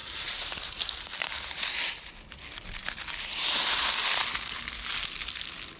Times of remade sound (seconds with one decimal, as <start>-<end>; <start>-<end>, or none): 0.0-2.1